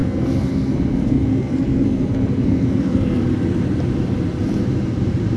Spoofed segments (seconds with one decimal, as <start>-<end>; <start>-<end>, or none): 0.0-3.2